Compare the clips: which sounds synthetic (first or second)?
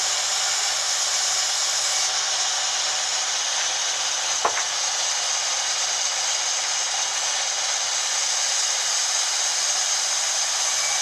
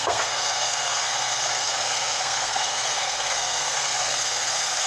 second